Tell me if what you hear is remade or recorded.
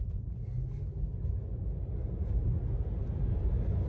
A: recorded